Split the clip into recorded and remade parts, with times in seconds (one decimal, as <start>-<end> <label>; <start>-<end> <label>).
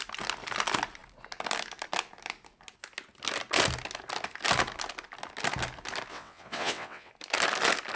0.0-6.1 recorded; 6.1-7.1 remade; 7.1-8.0 recorded